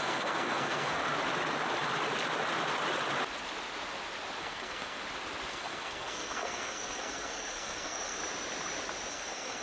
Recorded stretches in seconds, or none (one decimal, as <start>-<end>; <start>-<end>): 1.0-4.4; 5.0-5.5; 8.2-9.1